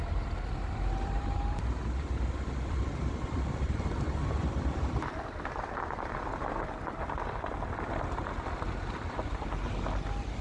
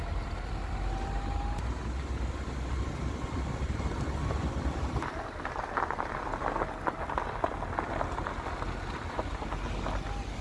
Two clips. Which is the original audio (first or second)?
second